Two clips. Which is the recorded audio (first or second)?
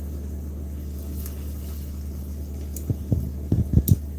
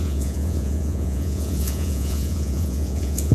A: first